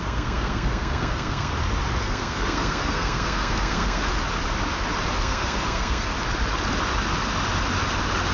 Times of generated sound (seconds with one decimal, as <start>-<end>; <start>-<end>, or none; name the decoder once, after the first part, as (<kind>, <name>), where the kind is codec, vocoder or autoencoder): 0.0-1.5 (codec, SNAC); 2.0-4.0; 5.2-6.1